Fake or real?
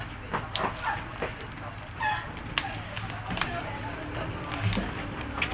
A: real